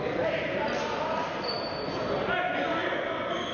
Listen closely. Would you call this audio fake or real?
real